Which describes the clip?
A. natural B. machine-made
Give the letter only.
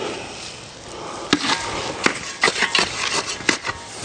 A